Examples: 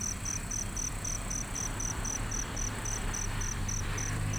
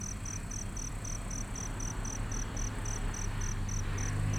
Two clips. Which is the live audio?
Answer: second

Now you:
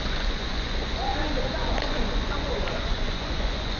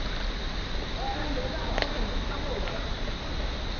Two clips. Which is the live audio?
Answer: second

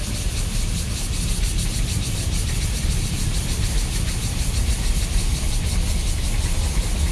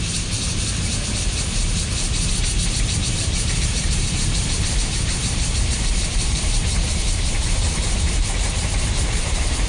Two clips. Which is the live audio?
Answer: first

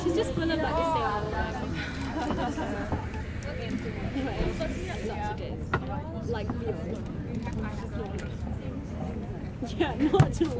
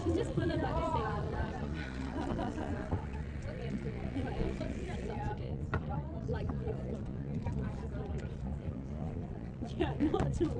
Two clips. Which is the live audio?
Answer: first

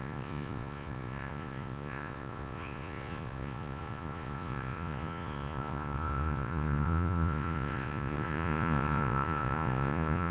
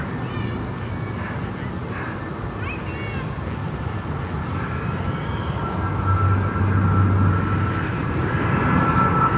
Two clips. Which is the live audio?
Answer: second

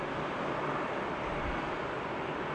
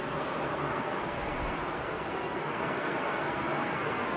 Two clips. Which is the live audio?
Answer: first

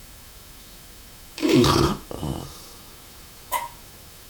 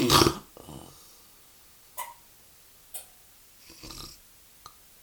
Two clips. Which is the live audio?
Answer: second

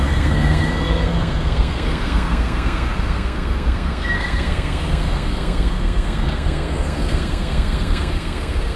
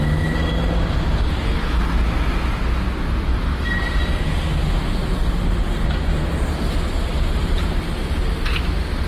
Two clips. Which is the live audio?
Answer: second